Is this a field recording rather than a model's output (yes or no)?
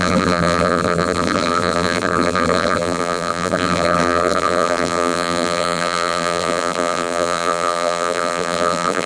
no